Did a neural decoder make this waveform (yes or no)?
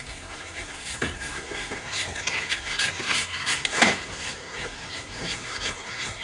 yes